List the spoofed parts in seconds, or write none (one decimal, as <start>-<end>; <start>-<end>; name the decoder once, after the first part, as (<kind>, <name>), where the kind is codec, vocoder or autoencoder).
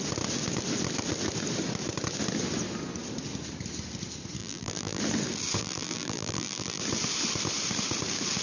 4.4-5.0 (vocoder, BigVGAN v2); 5.6-6.8